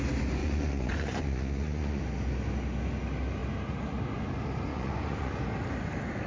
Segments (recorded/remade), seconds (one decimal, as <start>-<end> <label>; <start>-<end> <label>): 0.0-0.4 recorded; 0.4-2.0 remade; 2.0-4.7 recorded; 4.7-5.4 remade; 5.4-6.3 recorded